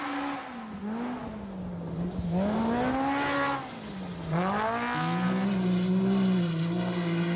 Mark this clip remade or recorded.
recorded